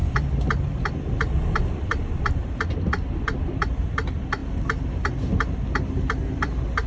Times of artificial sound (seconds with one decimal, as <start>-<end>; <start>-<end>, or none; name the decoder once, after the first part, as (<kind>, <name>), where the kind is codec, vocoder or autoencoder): 0.0-4.4 (vocoder, BigVGAN v2); 6.3-6.9